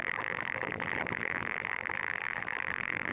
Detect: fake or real fake